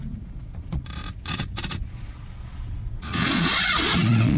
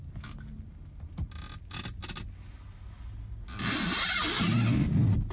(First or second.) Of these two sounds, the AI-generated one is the first